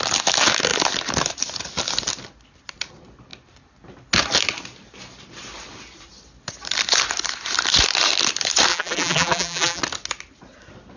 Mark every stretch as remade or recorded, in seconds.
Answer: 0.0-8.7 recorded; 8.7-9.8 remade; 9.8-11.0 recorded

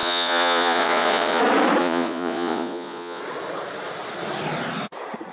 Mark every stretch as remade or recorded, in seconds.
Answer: 0.0-1.4 remade; 1.4-1.8 recorded; 1.8-3.2 remade; 3.2-5.3 recorded